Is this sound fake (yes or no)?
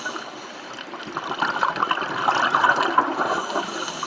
no